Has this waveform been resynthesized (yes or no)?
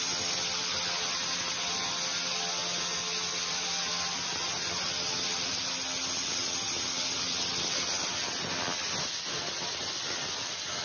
no